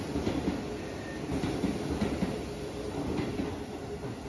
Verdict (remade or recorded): recorded